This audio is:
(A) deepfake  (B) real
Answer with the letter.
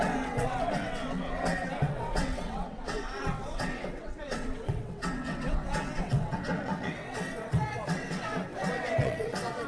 A